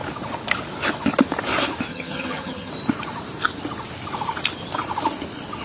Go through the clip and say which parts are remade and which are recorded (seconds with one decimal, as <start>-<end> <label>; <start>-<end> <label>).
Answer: 0.0-1.9 recorded; 1.9-2.7 remade; 2.7-5.6 recorded